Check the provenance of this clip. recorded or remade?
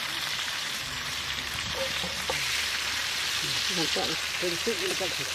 remade